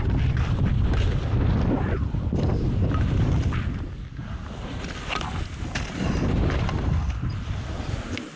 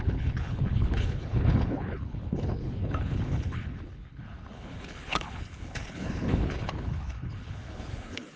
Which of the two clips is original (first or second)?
first